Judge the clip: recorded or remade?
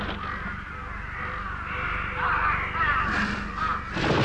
recorded